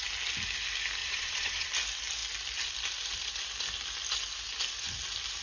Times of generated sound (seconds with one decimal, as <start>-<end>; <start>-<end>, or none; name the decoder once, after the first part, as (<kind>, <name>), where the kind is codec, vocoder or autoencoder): 1.0-1.7 (vocoder, Vocos)